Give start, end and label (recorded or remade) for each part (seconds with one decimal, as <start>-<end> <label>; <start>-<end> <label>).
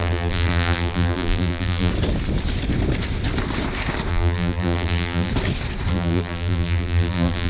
0.0-1.9 remade; 1.9-4.1 recorded; 4.1-5.3 remade; 5.3-5.9 recorded; 5.9-7.5 remade